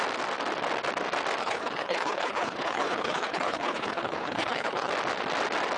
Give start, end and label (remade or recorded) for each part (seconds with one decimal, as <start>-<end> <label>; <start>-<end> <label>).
0.0-1.4 recorded; 1.4-4.9 remade; 4.9-5.8 recorded

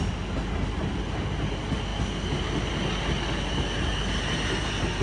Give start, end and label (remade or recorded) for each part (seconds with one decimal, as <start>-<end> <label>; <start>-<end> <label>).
0.0-5.0 recorded

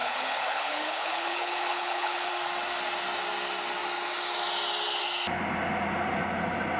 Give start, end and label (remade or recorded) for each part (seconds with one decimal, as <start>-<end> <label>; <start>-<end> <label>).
0.0-2.3 remade; 2.3-6.8 recorded